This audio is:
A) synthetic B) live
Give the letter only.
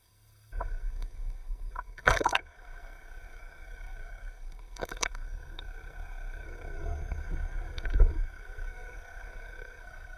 A